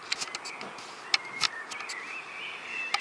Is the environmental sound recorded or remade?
recorded